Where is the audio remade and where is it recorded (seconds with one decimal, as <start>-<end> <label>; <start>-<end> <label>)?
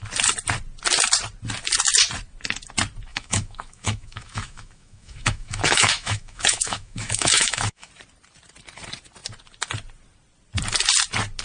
0.0-3.1 recorded; 3.1-7.9 remade; 7.9-11.4 recorded